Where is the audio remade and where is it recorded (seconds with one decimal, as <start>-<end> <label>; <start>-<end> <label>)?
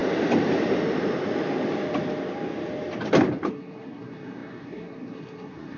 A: 0.0-3.5 recorded; 3.5-5.8 remade